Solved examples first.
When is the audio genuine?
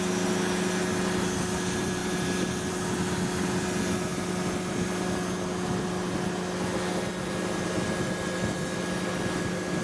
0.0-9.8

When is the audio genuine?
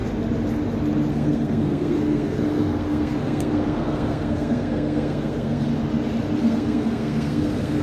0.0-1.1; 5.7-6.4